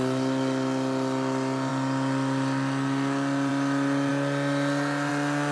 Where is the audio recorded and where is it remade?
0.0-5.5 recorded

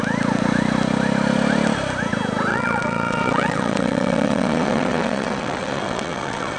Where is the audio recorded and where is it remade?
0.0-2.5 recorded; 2.5-6.6 remade

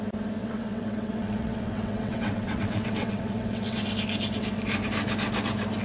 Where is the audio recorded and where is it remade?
0.0-0.4 recorded; 0.4-3.8 remade; 3.8-5.8 recorded

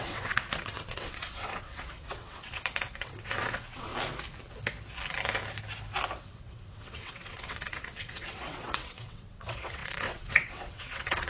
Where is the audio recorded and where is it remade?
0.0-3.9 remade; 3.9-6.2 recorded; 6.2-11.3 remade

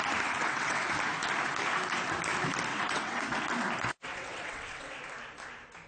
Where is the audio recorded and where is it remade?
0.0-0.4 recorded; 0.4-0.9 remade; 0.9-2.7 recorded; 2.7-3.2 remade; 3.2-4.1 recorded; 4.1-5.0 remade; 5.0-5.9 recorded

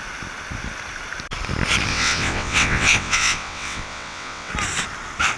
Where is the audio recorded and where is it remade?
0.0-1.9 recorded; 1.9-4.5 remade; 4.5-5.4 recorded